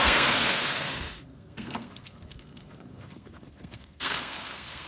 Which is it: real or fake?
fake